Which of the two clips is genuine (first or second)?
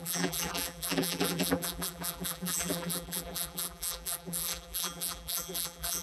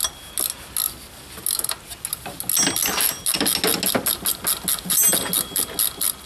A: second